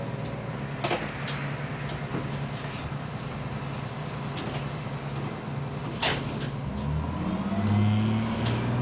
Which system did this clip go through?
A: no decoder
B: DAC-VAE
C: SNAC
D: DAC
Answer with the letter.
A